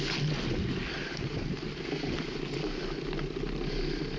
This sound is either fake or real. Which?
real